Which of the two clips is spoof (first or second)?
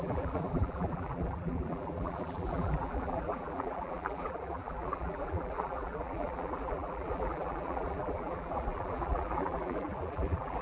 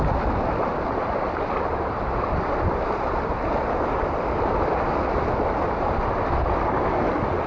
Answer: first